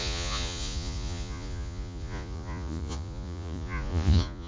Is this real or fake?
fake